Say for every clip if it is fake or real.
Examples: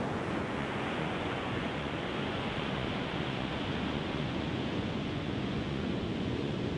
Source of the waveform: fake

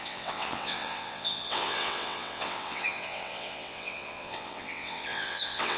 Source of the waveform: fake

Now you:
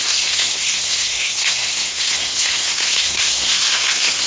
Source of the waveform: fake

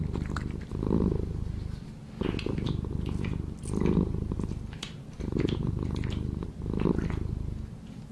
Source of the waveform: real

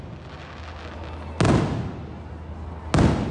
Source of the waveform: real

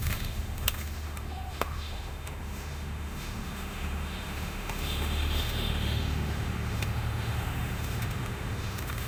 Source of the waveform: fake